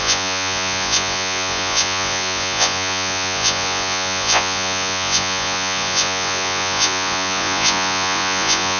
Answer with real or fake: fake